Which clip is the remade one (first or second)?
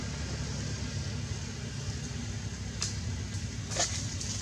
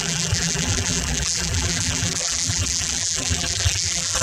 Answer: second